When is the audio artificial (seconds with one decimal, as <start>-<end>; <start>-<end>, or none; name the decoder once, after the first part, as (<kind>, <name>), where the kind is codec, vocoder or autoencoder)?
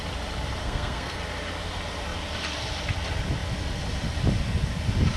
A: 0.6-1.2 (codec, SNAC)